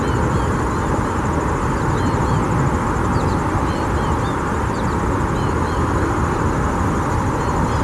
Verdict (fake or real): real